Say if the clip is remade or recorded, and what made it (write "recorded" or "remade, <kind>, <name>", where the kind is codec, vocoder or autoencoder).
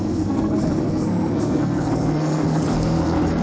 remade, codec, SNAC